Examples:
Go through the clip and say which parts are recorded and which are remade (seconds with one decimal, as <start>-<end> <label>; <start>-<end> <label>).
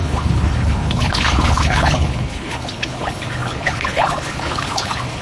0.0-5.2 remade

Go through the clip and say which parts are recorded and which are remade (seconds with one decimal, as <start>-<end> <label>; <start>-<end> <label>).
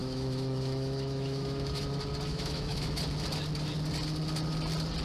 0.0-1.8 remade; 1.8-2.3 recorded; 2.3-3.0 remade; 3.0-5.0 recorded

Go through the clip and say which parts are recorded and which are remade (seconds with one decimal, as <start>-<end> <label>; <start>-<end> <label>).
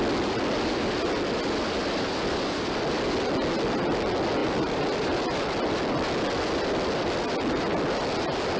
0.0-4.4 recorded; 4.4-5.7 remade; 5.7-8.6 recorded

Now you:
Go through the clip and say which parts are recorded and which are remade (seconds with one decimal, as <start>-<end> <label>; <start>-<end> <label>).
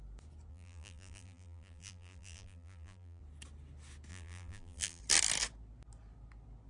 0.0-0.5 recorded; 0.5-3.2 remade; 3.2-4.1 recorded; 4.1-5.0 remade; 5.0-6.7 recorded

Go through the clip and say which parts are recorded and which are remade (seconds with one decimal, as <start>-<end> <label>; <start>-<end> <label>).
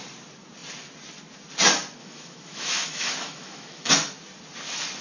0.0-2.0 recorded; 2.0-3.9 remade; 3.9-5.0 recorded